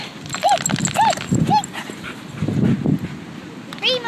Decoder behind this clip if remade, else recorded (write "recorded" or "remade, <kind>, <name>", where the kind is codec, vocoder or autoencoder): recorded